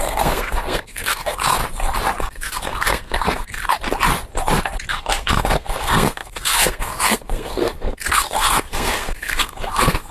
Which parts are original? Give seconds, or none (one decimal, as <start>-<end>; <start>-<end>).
1.6-2.2; 3.6-4.9